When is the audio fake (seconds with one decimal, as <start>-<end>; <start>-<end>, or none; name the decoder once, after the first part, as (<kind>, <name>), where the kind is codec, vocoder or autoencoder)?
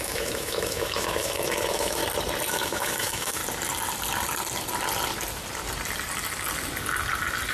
0.0-2.0 (autoencoder, DAC-VAE); 2.5-3.4